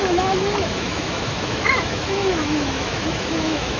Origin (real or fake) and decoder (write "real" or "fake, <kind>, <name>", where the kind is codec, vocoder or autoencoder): fake, autoencoder, DAC-VAE